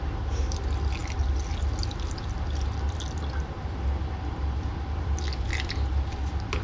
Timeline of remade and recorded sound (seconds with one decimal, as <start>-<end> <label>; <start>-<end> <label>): 0.0-6.6 recorded